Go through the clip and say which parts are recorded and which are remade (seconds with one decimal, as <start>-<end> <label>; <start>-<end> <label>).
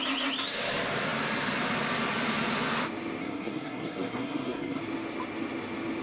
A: 0.0-3.2 recorded; 3.2-4.8 remade; 4.8-6.0 recorded